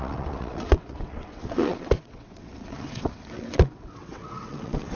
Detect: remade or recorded remade